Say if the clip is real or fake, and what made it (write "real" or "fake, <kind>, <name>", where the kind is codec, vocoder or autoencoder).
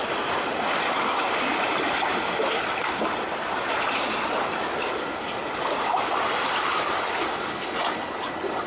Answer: real